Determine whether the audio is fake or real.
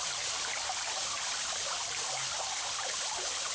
real